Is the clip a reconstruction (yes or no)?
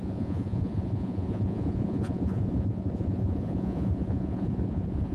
yes